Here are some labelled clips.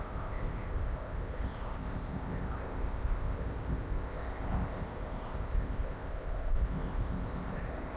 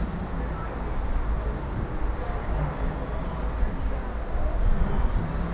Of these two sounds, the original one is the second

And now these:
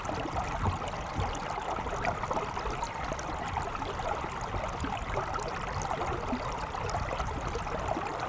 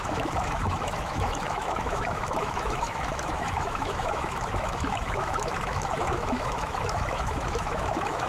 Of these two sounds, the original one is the first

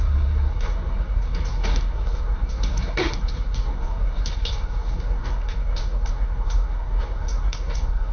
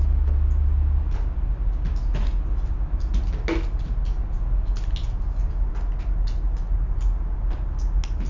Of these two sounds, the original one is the second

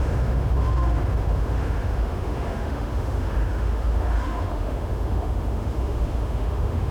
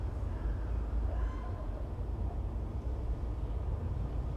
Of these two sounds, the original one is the second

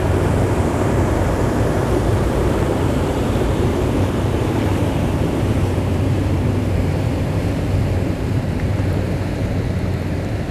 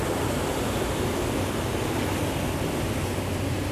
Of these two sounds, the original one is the second